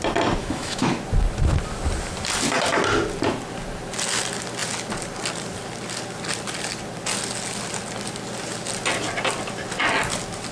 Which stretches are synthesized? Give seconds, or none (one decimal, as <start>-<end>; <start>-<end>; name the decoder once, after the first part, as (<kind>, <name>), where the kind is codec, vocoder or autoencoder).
0.4-0.9 (autoencoder, DAC-VAE)